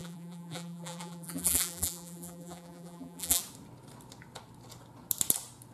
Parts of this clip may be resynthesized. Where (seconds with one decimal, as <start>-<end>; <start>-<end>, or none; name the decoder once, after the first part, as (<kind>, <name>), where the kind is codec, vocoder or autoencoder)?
0.0-3.4 (vocoder, BigVGAN v2)